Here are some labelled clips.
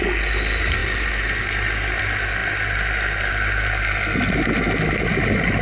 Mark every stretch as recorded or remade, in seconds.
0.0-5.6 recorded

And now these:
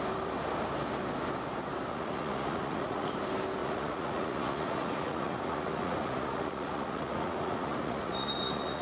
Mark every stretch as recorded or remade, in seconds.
0.0-1.9 recorded; 1.9-3.1 remade; 3.1-3.6 recorded; 3.6-8.8 remade

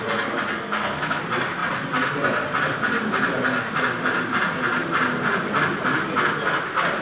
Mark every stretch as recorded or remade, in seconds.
0.0-0.5 recorded; 0.5-1.2 remade; 1.2-7.0 recorded